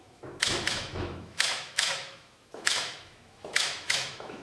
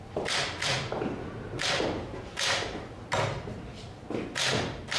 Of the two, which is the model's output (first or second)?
first